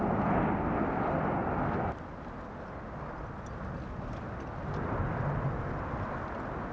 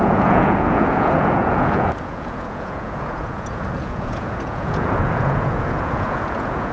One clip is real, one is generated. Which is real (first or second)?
first